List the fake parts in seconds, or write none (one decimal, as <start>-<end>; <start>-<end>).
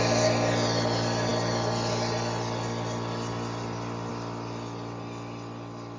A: none